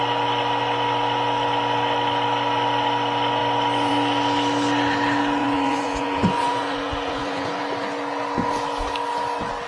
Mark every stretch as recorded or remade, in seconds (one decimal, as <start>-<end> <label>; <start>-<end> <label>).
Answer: 0.0-5.4 recorded; 5.4-7.6 remade; 7.6-9.7 recorded